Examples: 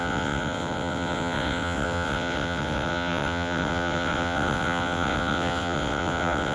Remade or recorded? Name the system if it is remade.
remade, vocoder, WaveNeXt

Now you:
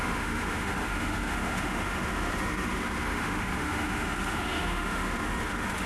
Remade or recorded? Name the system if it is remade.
remade, autoencoder, DAC-VAE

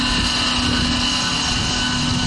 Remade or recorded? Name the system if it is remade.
recorded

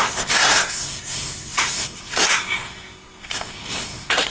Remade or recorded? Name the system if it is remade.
remade, codec, SNAC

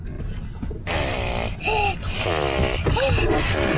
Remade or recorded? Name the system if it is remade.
recorded